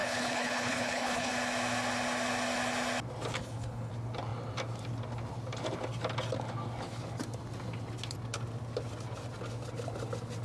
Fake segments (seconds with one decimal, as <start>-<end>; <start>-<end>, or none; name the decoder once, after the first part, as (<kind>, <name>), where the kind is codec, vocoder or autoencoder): 0.0-1.3 (codec, HILCodec); 3.4-3.9